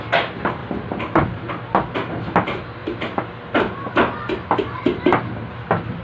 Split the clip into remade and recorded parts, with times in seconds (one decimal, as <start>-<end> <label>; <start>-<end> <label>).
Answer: 0.0-0.6 recorded; 0.6-1.5 remade; 1.5-2.8 recorded; 2.8-3.8 remade; 3.8-6.0 recorded